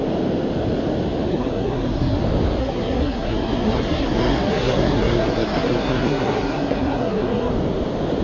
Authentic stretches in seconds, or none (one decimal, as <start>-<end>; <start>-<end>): 0.0-1.3; 2.2-2.6; 7.5-8.2